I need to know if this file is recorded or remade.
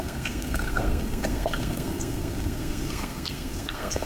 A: remade